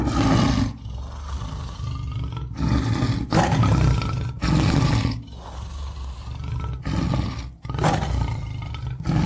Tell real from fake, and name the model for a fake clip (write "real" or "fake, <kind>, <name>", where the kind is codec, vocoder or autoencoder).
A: real